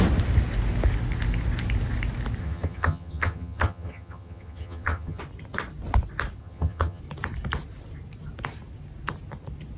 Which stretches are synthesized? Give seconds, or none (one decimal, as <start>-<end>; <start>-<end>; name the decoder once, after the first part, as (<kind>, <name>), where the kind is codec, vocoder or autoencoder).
2.4-5.2 (vocoder, HiFi-GAN); 6.4-7.0